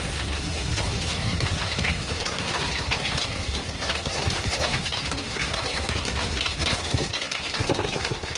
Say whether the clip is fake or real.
fake